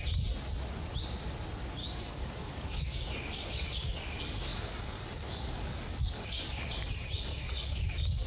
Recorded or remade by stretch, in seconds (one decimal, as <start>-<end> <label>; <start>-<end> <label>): 0.0-1.8 recorded; 1.8-6.6 remade; 6.6-7.3 recorded; 7.3-8.3 remade